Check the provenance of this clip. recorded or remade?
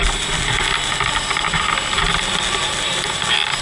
recorded